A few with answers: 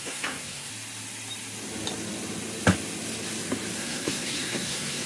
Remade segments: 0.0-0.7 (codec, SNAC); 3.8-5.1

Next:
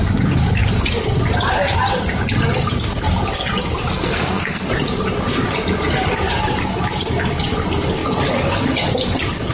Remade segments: 3.9-4.7 (codec, SNAC)

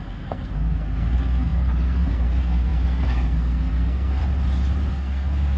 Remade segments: 0.0-4.2 (codec, SNAC); 4.9-5.6